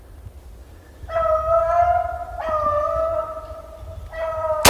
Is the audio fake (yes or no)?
no